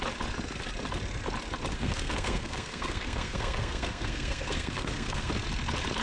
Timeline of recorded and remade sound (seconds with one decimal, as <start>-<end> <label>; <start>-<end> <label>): 0.0-1.7 recorded; 1.7-5.3 remade; 5.3-6.0 recorded

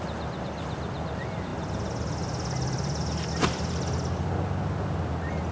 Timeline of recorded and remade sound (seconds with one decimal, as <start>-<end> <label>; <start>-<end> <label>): 0.0-5.5 recorded

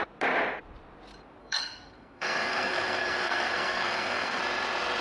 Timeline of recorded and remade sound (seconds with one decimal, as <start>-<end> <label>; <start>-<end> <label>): 0.0-1.4 recorded; 1.4-4.4 remade; 4.4-5.0 recorded